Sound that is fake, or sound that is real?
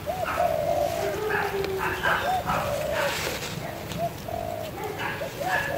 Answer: real